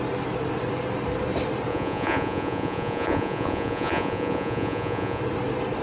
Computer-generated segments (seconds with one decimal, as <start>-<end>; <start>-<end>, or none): 1.7-5.2